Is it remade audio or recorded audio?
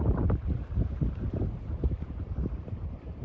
remade